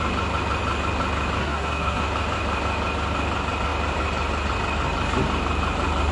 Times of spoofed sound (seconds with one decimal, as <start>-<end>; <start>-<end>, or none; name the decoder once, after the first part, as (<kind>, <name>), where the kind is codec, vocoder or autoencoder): 1.4-2.0 (codec, SNAC)